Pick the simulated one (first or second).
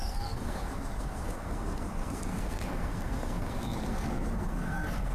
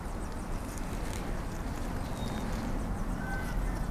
first